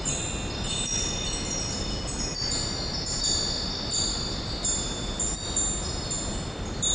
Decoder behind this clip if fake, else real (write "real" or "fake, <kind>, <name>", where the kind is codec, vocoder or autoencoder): real